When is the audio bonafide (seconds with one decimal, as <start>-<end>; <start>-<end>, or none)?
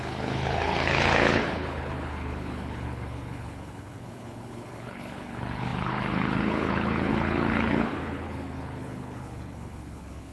none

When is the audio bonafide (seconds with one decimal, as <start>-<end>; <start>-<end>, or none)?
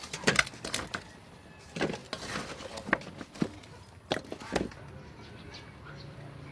0.0-6.5